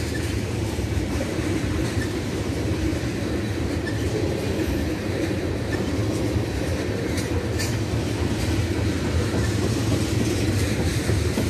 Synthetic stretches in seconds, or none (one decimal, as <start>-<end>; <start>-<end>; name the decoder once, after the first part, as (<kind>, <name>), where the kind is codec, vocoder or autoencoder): 0.0-2.9 (vocoder, BigVGAN v2); 3.6-6.0; 10.3-11.5